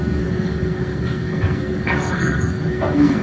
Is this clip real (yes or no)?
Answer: no